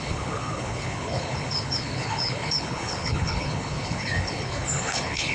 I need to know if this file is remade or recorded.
remade